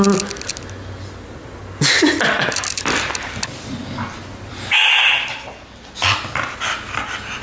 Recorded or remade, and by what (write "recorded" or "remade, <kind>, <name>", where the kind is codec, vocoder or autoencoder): recorded